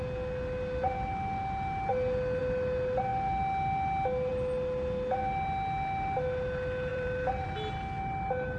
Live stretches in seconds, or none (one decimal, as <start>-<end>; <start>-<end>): 0.0-6.9; 7.5-8.6